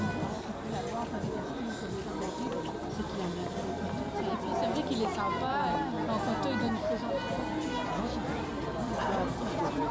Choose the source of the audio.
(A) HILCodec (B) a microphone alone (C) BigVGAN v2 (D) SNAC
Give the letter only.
B